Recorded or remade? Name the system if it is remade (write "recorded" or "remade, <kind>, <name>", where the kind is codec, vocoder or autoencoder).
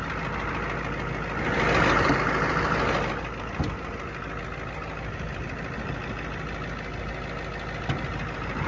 recorded